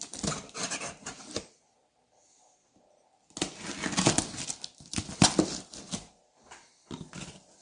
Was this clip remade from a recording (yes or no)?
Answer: no